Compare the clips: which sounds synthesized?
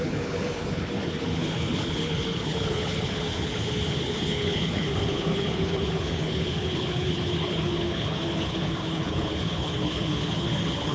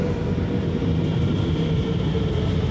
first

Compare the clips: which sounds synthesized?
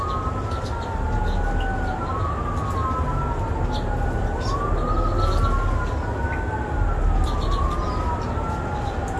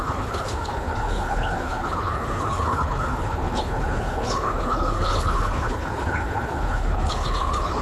second